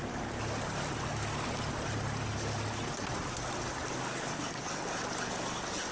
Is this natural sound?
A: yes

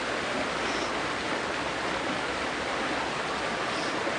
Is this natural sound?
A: yes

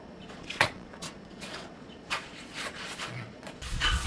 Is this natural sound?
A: no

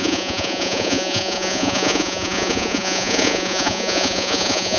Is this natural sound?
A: no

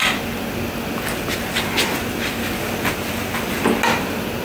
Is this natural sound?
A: yes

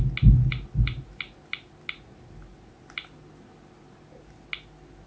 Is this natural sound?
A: yes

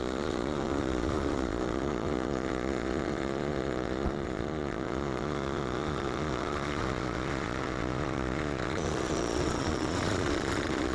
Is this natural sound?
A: no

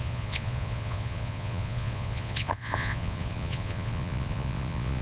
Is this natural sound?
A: no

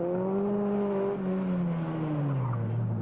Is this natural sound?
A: yes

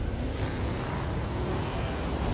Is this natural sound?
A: yes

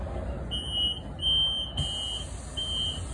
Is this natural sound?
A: yes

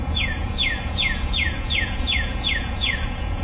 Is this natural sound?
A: no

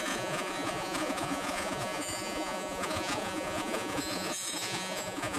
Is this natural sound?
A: no